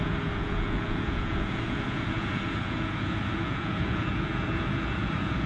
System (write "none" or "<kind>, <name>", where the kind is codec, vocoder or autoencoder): vocoder, Vocos